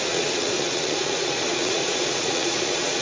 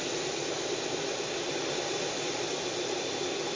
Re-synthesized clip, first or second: first